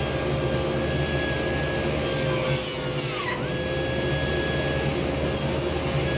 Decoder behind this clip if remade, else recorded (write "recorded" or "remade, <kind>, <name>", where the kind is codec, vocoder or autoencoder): recorded